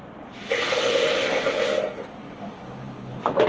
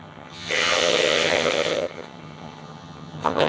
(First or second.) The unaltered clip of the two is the first